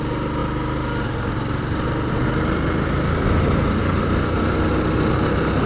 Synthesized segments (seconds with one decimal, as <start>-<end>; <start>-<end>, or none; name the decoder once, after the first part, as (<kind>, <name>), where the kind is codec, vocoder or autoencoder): none